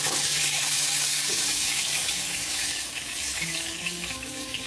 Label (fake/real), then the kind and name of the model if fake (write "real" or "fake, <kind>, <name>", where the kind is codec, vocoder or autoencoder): fake, codec, DAC